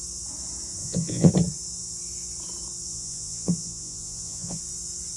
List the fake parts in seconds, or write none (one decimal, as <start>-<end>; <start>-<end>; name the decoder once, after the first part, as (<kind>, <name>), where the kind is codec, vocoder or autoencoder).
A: 0.8-1.3 (vocoder, Vocos); 2.9-4.6